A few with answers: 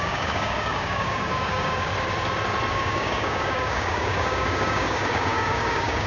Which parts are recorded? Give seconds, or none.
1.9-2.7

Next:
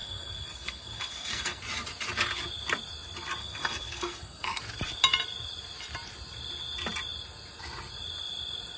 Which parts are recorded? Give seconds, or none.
1.6-3.4; 4.6-8.8